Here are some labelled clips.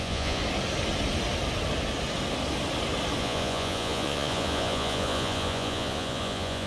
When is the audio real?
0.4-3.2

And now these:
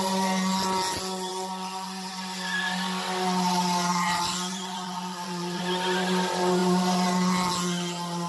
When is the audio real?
0.0-1.3; 2.1-3.9; 5.6-8.3